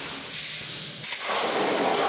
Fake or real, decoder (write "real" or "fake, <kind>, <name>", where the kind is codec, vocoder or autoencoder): real